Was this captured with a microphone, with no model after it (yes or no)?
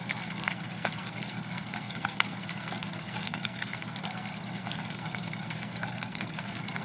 no